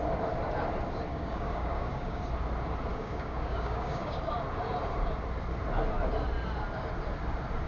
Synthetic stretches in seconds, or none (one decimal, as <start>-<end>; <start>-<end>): 1.1-2.2; 2.9-4.2